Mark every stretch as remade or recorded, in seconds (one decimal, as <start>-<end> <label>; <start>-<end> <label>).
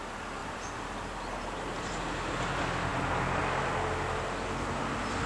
0.0-0.4 recorded; 0.4-2.5 remade; 2.5-5.3 recorded